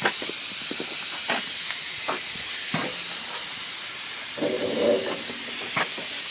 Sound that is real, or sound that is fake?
real